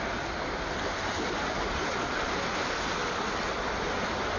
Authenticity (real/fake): real